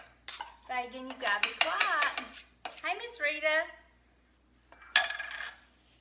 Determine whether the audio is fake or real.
real